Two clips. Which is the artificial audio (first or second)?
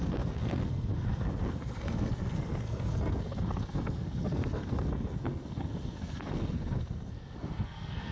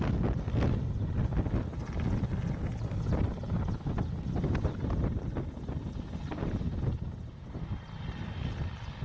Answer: first